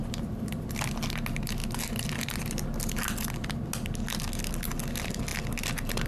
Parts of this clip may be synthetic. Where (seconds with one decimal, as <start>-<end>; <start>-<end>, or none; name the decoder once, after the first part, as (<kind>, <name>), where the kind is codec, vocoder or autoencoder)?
none